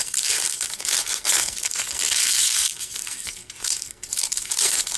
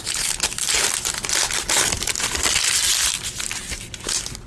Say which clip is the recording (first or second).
second